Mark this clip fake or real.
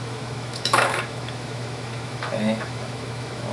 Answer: fake